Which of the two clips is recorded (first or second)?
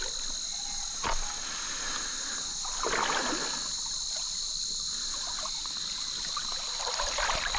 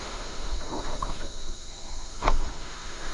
first